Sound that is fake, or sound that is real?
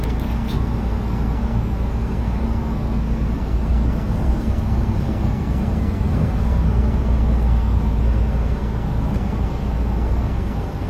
fake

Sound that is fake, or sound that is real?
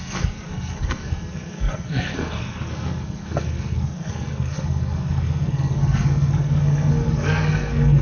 fake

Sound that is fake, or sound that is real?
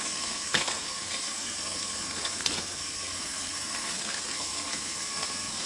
fake